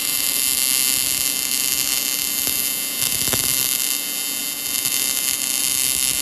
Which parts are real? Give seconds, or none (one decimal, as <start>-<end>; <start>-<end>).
0.0-6.2